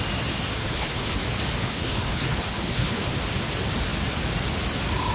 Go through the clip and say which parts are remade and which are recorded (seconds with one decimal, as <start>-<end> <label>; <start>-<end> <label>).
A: 0.0-0.6 recorded; 0.6-1.2 remade; 1.2-1.6 recorded; 1.6-3.1 remade; 3.1-5.1 recorded